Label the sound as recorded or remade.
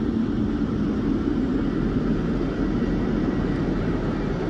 recorded